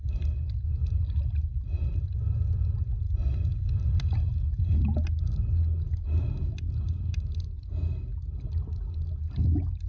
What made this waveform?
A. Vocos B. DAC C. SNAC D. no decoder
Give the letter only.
D